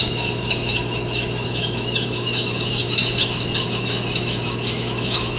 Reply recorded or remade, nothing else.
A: remade